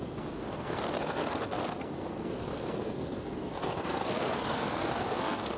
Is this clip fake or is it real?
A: fake